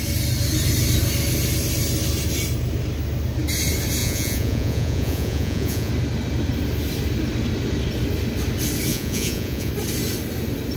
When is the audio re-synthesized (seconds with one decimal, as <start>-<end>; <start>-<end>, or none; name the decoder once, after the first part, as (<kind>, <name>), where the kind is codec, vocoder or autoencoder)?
4.0-5.9 (vocoder, Vocos); 8.9-9.7